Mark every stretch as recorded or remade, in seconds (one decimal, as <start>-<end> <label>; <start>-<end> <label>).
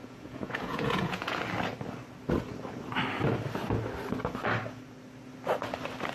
0.0-1.4 remade; 1.4-6.1 recorded